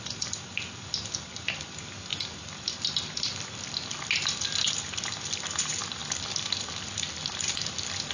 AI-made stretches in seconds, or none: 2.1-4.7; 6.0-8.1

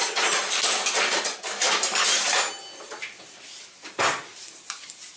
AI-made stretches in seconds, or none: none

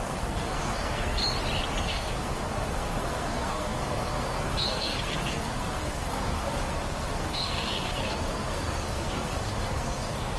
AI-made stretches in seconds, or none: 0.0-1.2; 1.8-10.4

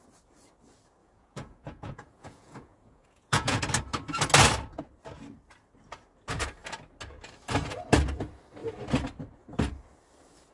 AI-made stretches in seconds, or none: 1.0-3.6

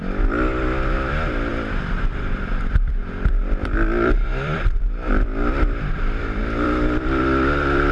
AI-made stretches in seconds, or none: 0.0-1.5; 2.0-7.9

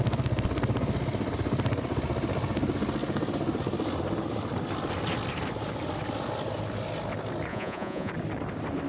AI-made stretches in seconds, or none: 7.5-8.1